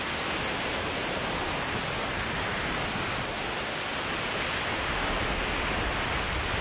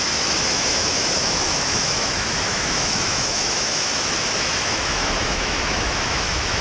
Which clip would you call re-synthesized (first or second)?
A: second